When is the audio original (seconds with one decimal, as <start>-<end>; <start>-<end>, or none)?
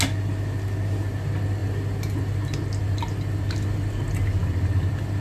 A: 0.0-5.2